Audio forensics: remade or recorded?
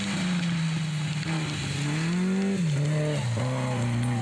recorded